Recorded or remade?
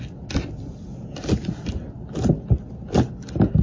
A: recorded